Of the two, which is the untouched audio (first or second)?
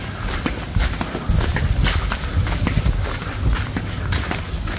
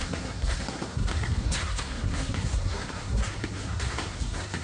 first